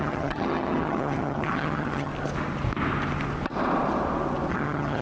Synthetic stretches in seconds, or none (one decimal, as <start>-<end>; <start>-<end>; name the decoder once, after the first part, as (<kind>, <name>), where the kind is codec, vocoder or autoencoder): 0.0-2.1 (vocoder, HiFi-GAN); 4.5-5.0